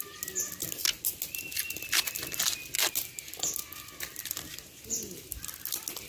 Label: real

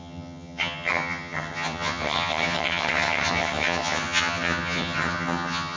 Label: fake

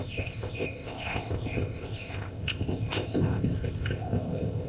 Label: fake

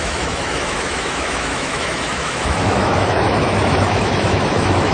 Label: fake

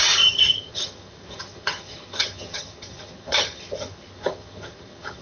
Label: fake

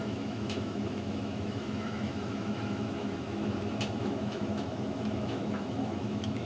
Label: fake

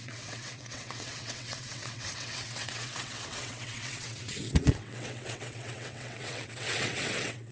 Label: fake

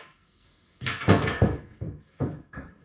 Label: fake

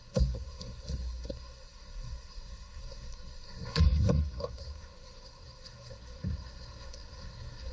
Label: fake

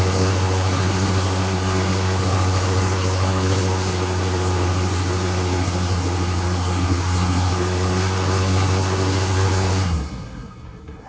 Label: fake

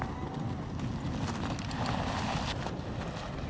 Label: real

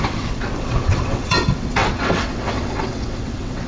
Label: fake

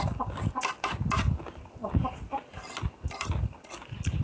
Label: real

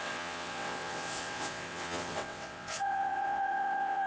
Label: fake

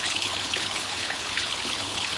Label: fake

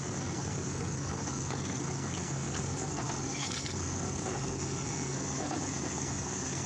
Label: fake